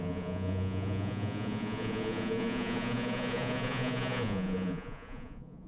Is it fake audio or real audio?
fake